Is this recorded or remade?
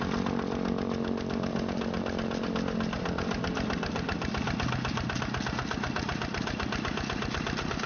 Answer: recorded